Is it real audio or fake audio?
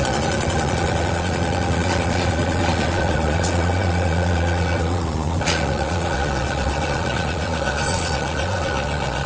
fake